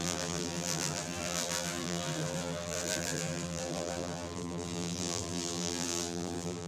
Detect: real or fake fake